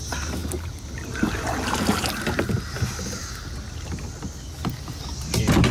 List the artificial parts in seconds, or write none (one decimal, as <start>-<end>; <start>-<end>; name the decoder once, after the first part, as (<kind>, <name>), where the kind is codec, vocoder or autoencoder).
none